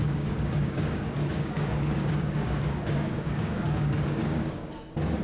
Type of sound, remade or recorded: remade